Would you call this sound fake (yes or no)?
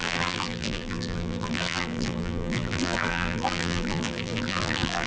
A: yes